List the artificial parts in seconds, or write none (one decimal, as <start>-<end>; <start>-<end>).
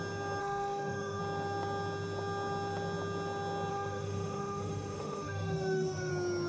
0.4-1.2; 3.7-6.1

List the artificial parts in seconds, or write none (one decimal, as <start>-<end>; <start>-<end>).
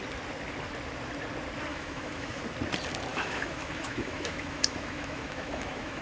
1.7-2.4; 3.1-6.0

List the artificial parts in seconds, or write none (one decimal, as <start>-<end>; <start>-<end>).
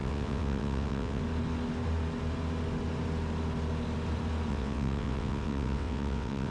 0.0-1.2; 4.5-6.5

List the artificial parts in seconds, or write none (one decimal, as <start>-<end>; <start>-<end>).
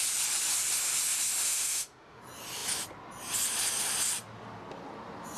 1.4-2.2